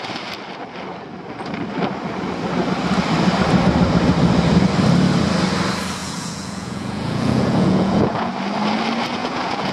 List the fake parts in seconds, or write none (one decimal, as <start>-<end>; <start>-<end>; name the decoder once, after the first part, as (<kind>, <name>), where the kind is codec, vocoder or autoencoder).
6.0-8.3 (vocoder, Vocos); 9.2-9.7